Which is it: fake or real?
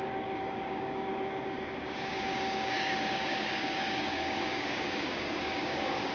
fake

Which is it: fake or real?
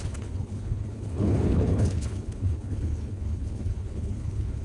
fake